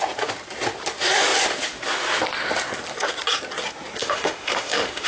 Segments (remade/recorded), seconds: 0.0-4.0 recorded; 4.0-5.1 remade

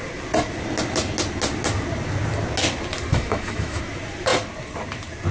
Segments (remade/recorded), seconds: 0.0-3.1 recorded; 3.1-3.8 remade; 3.8-5.3 recorded

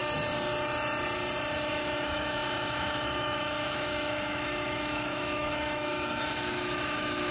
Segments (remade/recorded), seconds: 0.0-1.7 recorded; 1.7-7.3 remade

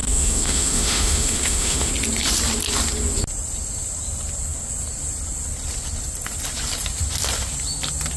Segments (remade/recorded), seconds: 0.0-1.9 remade; 1.9-8.2 recorded

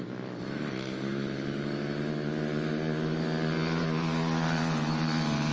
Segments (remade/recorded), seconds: 0.0-2.1 remade; 2.1-5.5 recorded